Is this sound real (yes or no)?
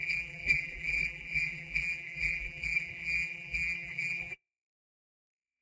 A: no